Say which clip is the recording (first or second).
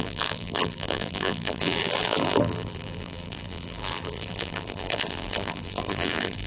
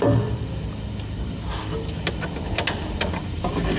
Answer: second